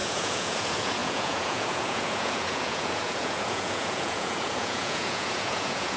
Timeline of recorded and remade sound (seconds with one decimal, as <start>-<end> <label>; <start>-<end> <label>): 0.0-6.0 remade